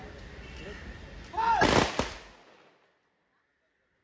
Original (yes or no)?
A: yes